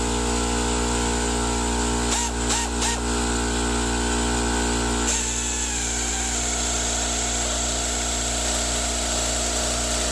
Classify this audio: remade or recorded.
recorded